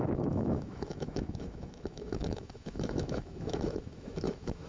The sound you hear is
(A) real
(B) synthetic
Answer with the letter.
B